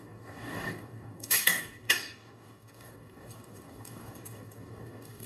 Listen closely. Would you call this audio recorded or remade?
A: remade